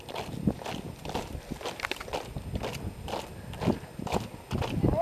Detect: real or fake real